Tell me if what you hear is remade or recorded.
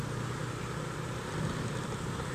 recorded